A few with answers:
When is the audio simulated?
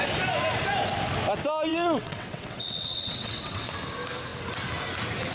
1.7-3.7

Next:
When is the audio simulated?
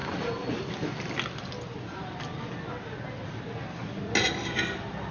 none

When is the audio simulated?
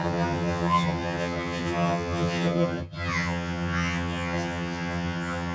0.0-5.5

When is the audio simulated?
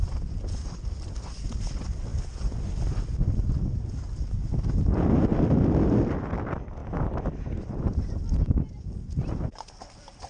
none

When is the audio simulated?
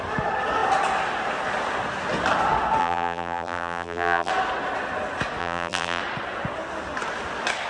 2.8-4.3; 5.4-6.0